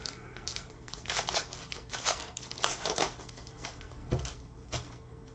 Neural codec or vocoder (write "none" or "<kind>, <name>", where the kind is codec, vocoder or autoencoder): codec, SNAC